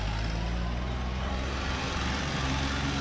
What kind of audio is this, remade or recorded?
recorded